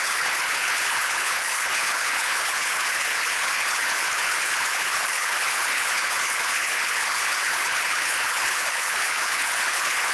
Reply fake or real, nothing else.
fake